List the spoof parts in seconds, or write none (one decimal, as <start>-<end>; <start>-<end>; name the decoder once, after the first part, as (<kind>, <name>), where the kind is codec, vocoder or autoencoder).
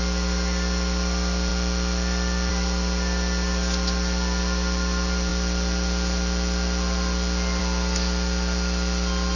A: none